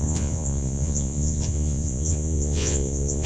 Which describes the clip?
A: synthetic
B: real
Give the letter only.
A